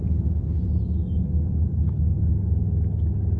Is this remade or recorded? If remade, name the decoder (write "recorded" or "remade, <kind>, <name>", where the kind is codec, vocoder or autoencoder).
recorded